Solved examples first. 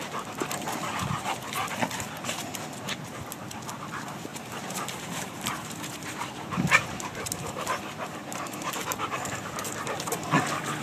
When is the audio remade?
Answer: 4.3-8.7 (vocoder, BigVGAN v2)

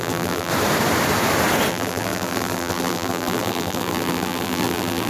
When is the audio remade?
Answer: 0.0-0.5 (vocoder, BigVGAN v2); 1.7-5.1

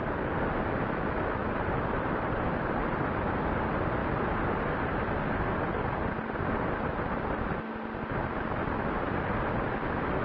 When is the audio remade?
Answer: 1.4-3.4 (vocoder, BigVGAN v2)

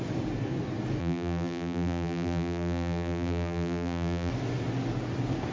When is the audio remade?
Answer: 1.0-4.3 (vocoder, BigVGAN v2)

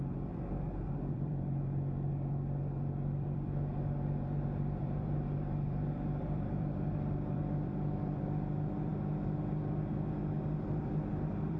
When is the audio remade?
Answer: 0.0-8.9 (vocoder, BigVGAN v2); 10.8-11.6

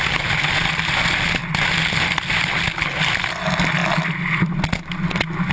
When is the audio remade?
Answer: none

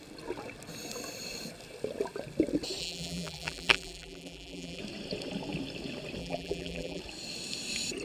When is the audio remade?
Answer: 2.8-4.8 (vocoder, BigVGAN v2); 6.2-7.0

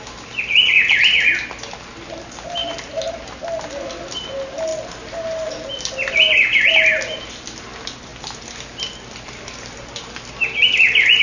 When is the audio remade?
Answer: 2.6-3.4 (vocoder, BigVGAN v2)